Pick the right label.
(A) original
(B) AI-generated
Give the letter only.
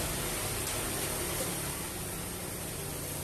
A